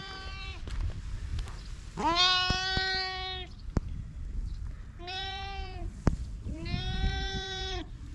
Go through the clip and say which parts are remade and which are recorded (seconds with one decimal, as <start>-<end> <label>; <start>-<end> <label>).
0.0-1.3 remade; 1.3-5.0 recorded; 5.0-8.1 remade